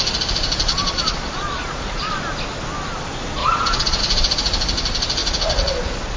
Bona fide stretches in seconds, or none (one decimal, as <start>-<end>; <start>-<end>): 0.0-0.7; 2.1-3.4; 4.0-5.2